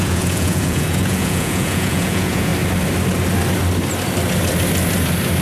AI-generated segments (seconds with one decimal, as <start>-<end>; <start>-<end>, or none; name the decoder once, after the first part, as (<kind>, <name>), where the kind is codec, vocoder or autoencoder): 0.0-2.5 (vocoder, Vocos)